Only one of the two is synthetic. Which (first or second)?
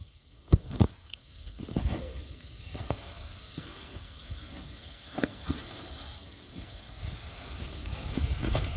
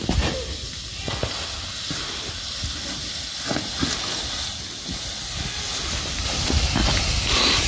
first